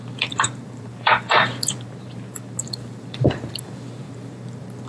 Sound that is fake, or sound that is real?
fake